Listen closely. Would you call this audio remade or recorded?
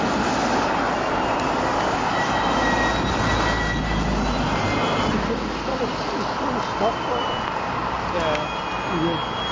recorded